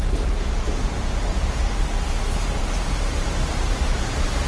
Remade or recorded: remade